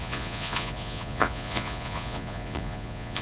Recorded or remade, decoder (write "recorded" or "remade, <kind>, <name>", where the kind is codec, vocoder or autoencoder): remade, vocoder, Vocos